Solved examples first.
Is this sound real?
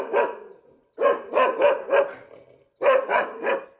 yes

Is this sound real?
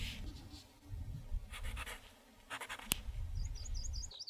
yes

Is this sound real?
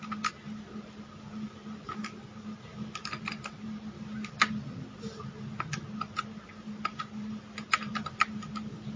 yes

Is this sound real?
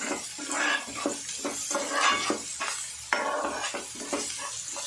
yes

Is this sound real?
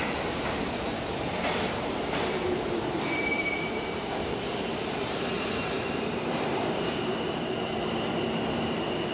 no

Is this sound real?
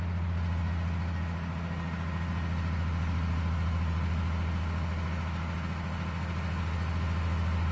yes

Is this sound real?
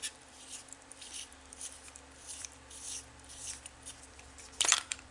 no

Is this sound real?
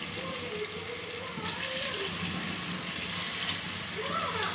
yes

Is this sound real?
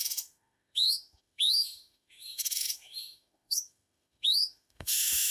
no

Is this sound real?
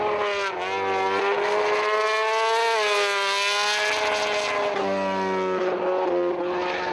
yes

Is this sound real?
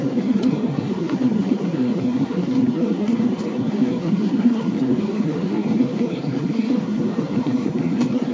no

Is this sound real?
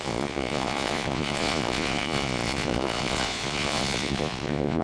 no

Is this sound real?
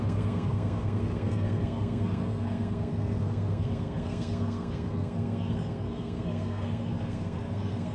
no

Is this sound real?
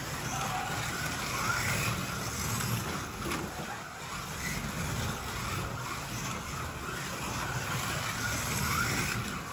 yes